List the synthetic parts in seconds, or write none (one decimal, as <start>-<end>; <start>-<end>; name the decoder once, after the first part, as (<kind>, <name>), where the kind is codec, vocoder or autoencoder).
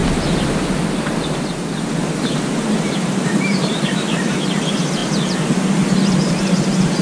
2.2-5.0 (vocoder, BigVGAN v2); 6.1-7.0